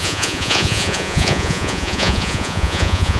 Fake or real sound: fake